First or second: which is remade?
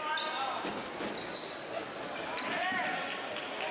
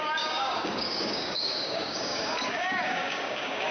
second